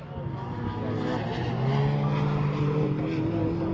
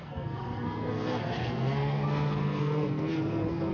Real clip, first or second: first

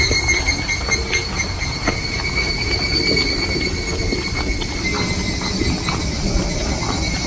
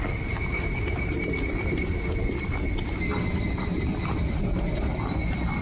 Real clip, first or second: first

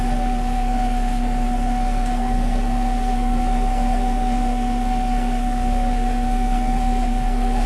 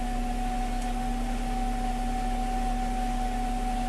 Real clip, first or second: second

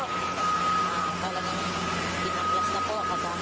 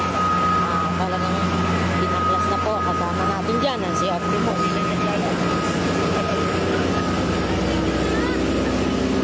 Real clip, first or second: second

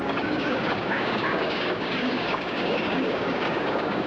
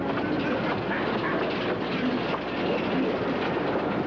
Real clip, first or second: second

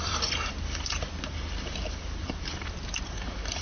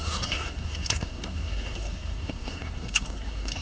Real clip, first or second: first